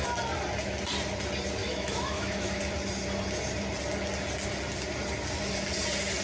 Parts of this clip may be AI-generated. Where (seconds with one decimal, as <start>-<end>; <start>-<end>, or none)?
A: 1.6-2.6

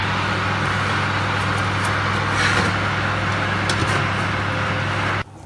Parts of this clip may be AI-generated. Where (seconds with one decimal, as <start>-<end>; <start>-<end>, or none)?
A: none

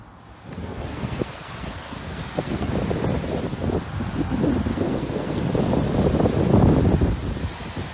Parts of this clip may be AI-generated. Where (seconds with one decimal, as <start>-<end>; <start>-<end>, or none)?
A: 0.4-2.7; 4.7-5.4

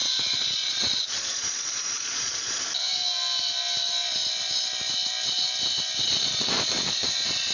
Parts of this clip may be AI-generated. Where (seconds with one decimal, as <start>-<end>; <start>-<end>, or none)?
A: 0.0-2.6; 6.0-7.5

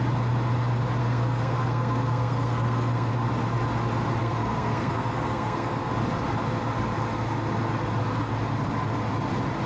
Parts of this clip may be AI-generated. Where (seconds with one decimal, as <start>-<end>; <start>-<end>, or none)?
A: 1.0-3.1; 4.2-5.9

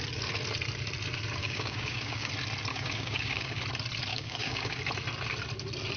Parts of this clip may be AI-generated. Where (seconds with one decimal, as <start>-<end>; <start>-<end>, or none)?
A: 1.4-2.3; 2.7-3.6; 4.1-4.8